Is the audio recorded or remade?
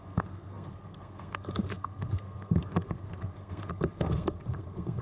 remade